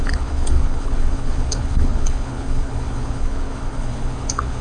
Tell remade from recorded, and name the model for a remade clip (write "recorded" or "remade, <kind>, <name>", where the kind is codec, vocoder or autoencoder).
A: remade, codec, HILCodec